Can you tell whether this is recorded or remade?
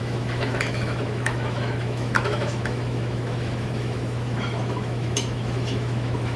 remade